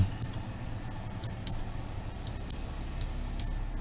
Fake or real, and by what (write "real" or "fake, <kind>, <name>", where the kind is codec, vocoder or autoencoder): real